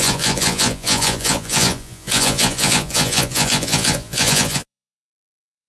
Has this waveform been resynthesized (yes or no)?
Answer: yes